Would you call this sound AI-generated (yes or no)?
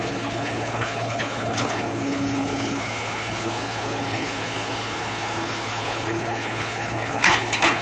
yes